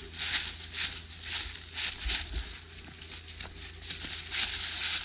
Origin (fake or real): real